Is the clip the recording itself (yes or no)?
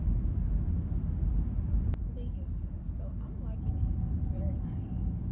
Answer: no